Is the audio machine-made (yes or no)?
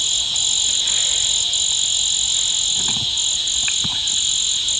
no